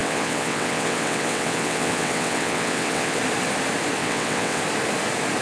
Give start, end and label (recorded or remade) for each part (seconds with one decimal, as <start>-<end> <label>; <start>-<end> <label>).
0.0-3.2 remade; 3.2-4.0 recorded; 4.0-4.6 remade; 4.6-5.4 recorded

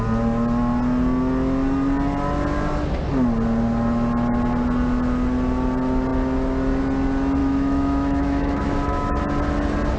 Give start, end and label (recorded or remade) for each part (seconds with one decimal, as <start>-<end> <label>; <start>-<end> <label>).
0.0-7.4 recorded; 7.4-9.2 remade; 9.2-10.0 recorded

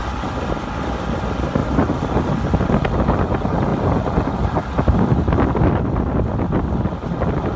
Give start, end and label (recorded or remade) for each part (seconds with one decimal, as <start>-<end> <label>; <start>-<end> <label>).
0.0-1.6 recorded; 1.6-2.7 remade; 2.7-3.7 recorded; 3.7-5.5 remade; 5.5-7.6 recorded